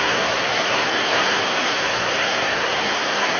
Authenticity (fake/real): fake